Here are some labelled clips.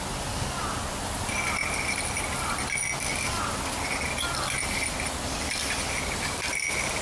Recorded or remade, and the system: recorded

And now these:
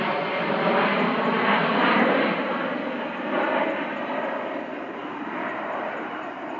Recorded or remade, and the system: recorded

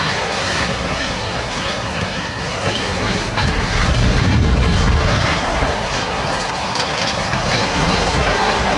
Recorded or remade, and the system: remade, codec, SNAC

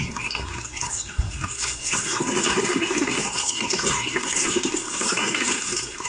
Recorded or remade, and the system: remade, codec, SNAC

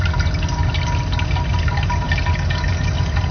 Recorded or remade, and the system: recorded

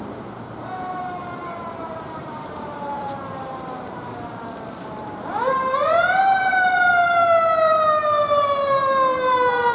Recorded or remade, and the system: remade, vocoder, BigVGAN v2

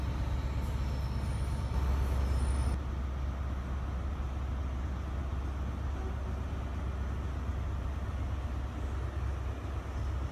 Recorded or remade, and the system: recorded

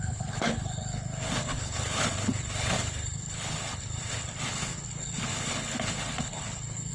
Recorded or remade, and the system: remade, codec, HILCodec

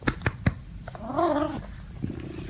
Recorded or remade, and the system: recorded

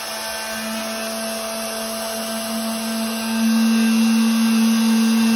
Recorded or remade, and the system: recorded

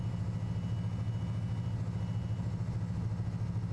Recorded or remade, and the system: recorded